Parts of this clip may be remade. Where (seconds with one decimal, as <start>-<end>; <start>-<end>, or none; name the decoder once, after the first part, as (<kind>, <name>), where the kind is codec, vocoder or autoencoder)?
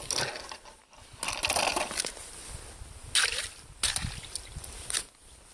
none